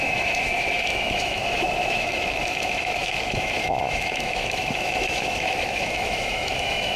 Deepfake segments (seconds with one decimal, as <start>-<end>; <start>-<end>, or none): 0.0-7.0